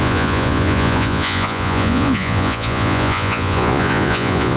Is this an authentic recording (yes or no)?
no